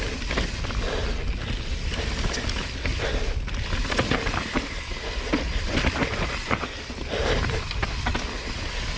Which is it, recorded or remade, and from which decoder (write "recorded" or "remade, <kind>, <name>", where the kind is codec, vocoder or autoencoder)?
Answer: recorded